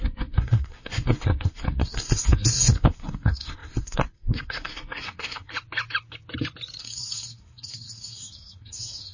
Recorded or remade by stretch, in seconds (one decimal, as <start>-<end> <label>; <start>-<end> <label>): 0.0-5.5 remade; 5.5-6.8 recorded; 6.8-9.1 remade